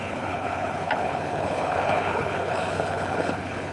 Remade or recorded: remade